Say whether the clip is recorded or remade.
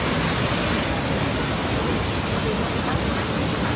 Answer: recorded